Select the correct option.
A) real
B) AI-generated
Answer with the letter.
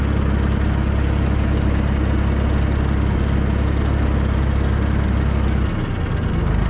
A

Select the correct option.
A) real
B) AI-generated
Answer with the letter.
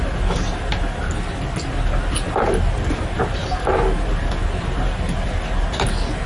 A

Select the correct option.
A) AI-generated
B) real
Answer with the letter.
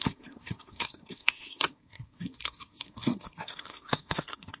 A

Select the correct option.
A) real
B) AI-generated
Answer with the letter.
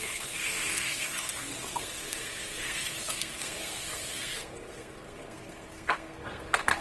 B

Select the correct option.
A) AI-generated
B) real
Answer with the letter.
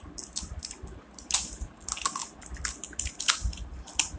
B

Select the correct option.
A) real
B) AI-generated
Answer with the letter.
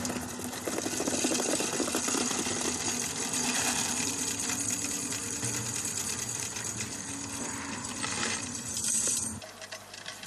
A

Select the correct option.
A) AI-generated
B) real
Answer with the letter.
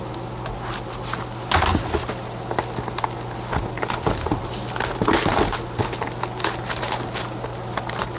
B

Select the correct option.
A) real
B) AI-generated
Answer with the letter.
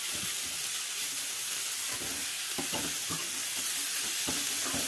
A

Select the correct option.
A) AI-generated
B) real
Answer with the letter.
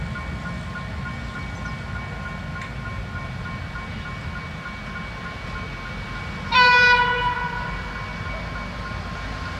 B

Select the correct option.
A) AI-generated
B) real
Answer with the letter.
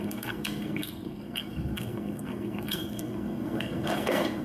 A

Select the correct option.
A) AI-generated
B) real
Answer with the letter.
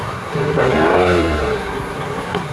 A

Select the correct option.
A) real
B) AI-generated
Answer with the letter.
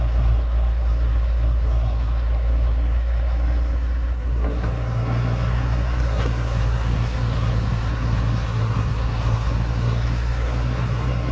B